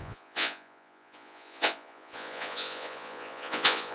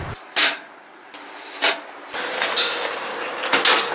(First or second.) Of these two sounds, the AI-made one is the first